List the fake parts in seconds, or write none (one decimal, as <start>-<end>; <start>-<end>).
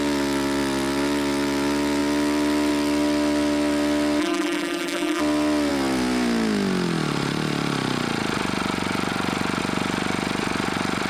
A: 4.2-5.2